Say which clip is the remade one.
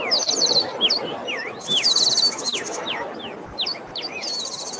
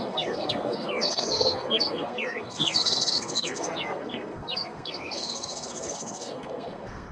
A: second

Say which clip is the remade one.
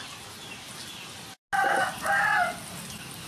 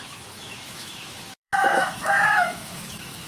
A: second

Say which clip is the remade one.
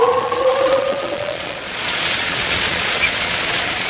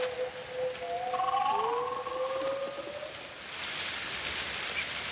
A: first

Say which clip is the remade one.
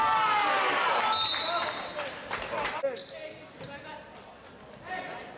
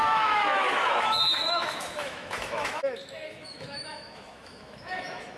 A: second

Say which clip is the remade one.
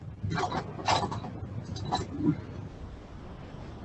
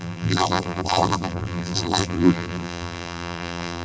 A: second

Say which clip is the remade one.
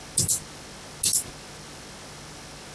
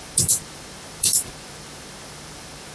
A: second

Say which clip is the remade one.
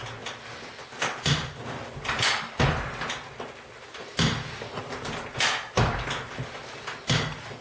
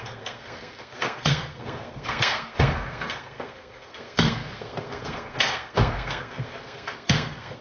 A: second